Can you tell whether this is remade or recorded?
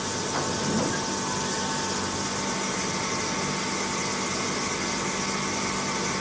recorded